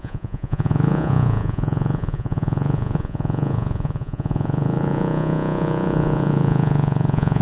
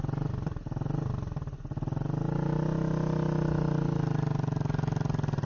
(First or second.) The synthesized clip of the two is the first